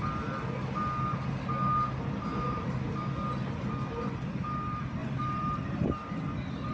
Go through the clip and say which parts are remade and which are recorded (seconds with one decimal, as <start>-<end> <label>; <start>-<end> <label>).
0.0-2.3 recorded; 2.3-2.9 remade; 2.9-5.0 recorded; 5.0-5.9 remade; 5.9-6.7 recorded